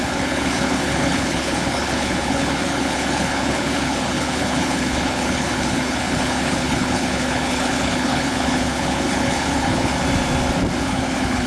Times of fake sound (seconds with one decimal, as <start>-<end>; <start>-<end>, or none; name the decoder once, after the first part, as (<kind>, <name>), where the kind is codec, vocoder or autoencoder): 0.0-9.9 (codec, HILCodec); 10.8-11.5